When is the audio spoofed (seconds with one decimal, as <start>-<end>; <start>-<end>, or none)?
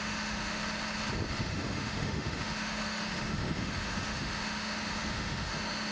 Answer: 0.0-0.6; 1.3-5.9